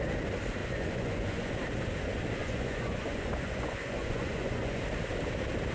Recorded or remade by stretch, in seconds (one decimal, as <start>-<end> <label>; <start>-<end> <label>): 0.0-0.6 recorded; 0.6-1.5 remade; 1.5-2.4 recorded; 2.4-4.8 remade; 4.8-5.7 recorded

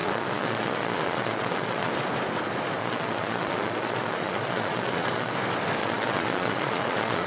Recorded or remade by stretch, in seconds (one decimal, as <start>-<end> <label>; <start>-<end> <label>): 0.0-1.9 remade; 1.9-2.8 recorded; 2.8-5.3 remade; 5.3-5.8 recorded; 5.8-7.3 remade

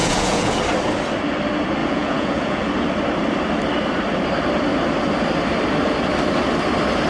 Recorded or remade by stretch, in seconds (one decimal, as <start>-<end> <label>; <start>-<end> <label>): 0.0-0.6 remade; 0.6-1.8 recorded; 1.8-2.7 remade; 2.7-7.1 recorded